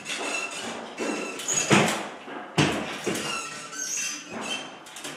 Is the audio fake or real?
real